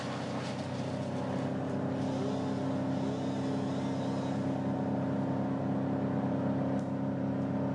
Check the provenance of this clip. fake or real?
real